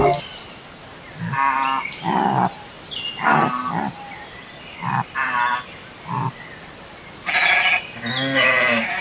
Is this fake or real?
real